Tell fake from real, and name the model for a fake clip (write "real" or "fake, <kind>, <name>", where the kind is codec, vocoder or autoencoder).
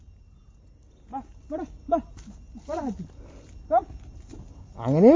real